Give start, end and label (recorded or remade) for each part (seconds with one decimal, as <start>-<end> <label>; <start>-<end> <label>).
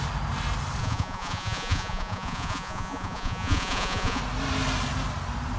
0.0-0.8 recorded; 0.8-4.2 remade; 4.2-5.6 recorded